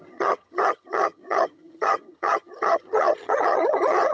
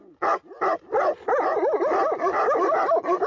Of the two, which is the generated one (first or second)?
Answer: first